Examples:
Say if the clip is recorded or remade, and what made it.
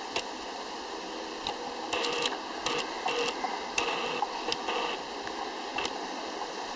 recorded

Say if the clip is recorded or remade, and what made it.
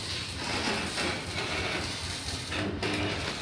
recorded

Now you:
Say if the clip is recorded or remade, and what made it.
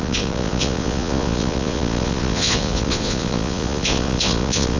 remade, vocoder, Vocos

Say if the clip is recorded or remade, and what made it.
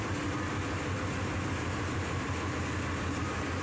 recorded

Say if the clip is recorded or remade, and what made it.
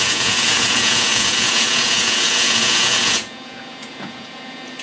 remade, vocoder, Vocos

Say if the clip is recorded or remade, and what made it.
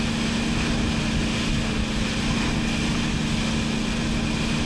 recorded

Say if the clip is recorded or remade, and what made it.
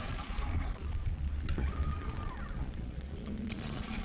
remade, vocoder, Vocos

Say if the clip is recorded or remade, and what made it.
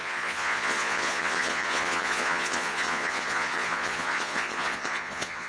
remade, vocoder, Vocos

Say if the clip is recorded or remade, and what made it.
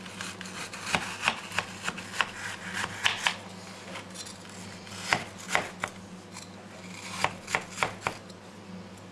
recorded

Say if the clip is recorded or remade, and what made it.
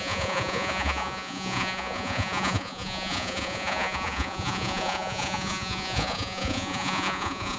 remade, vocoder, Vocos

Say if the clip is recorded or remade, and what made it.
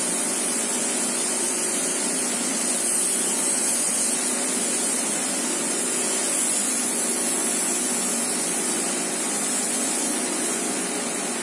remade, vocoder, Vocos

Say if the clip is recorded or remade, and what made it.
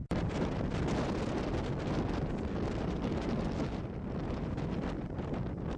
recorded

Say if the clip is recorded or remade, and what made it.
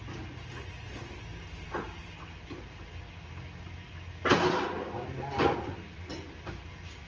recorded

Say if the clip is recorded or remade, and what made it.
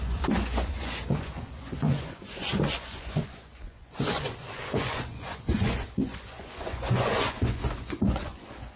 remade, vocoder, Vocos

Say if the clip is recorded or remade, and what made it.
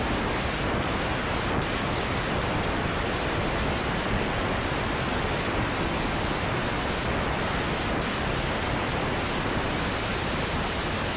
recorded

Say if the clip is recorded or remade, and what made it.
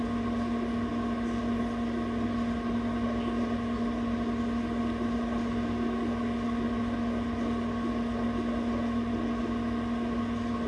recorded